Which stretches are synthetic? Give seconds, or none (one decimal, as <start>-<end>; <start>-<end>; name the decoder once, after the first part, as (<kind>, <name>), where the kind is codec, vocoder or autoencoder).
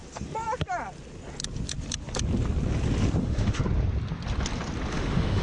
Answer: 3.2-3.6 (autoencoder, DAC-VAE); 4.9-5.4